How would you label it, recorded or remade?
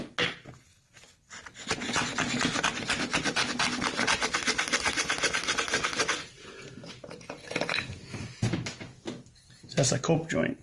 recorded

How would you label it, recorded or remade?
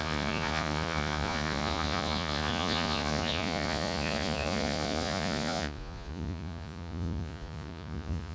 remade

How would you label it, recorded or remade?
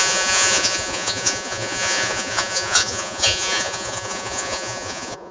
remade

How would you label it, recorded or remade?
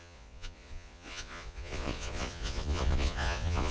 remade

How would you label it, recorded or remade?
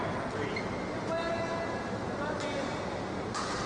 recorded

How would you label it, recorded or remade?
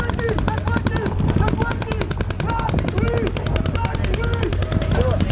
recorded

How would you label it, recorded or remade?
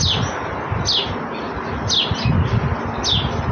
recorded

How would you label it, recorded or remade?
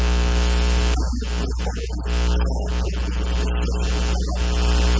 recorded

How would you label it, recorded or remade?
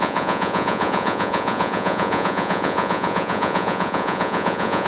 remade